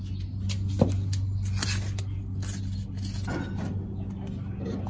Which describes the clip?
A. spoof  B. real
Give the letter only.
B